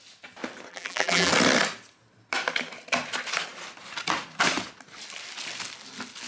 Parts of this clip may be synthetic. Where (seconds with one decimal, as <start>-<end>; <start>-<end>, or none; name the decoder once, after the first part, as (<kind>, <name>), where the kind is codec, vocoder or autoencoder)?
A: 0.7-1.3 (vocoder, BigVGAN v2)